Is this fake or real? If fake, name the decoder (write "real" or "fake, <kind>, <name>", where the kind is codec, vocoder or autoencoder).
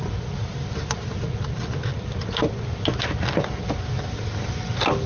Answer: real